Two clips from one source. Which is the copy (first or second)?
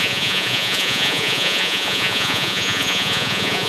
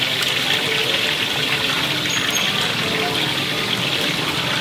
first